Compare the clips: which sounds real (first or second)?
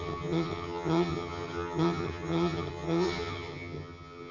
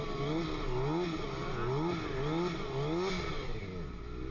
second